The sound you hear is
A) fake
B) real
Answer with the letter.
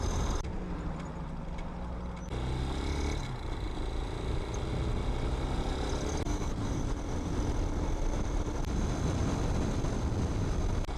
B